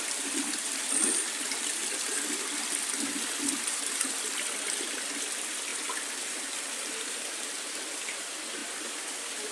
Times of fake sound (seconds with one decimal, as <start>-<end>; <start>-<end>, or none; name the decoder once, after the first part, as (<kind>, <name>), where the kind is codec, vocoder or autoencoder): none

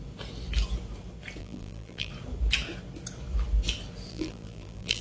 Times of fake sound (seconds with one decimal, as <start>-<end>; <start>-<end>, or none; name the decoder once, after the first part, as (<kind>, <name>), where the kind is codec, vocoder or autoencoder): 1.4-2.1 (vocoder, BigVGAN v2); 4.1-5.0

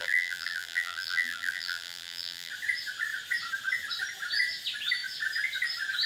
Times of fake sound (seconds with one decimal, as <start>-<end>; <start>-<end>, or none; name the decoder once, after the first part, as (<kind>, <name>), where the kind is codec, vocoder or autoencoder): 0.0-2.5 (vocoder, BigVGAN v2)

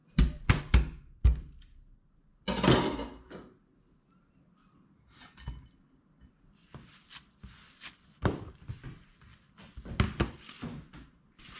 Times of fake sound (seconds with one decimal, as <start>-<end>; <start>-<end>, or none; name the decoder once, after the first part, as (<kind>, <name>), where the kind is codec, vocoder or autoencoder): none

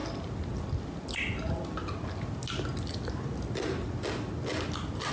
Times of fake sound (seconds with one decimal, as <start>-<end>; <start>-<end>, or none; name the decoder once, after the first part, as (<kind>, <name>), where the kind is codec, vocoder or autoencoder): none

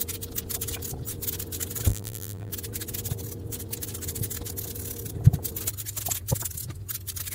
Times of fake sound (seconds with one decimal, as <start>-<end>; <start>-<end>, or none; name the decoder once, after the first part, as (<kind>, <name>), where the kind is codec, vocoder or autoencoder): 1.9-2.5 (vocoder, BigVGAN v2)

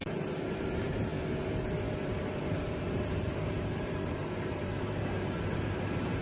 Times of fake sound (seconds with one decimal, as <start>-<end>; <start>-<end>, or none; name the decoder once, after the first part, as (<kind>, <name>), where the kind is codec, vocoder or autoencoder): 0.0-1.1 (vocoder, BigVGAN v2); 2.1-5.0

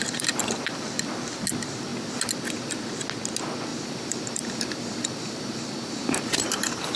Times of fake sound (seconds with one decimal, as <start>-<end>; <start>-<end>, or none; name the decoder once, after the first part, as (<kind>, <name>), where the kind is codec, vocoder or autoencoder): 0.0-0.8 (vocoder, BigVGAN v2); 3.7-7.0